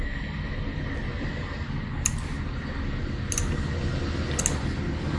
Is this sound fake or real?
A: real